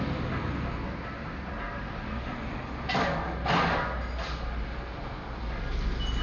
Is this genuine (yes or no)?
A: yes